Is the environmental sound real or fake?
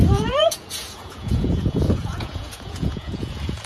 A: fake